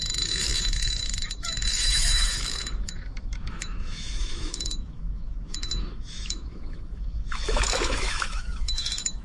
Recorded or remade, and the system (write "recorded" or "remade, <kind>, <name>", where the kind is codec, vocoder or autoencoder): remade, autoencoder, DAC-VAE